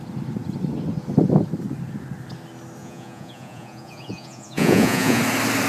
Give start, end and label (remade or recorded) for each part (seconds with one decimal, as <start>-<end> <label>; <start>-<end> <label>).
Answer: 0.0-2.8 recorded; 2.8-5.2 remade; 5.2-5.7 recorded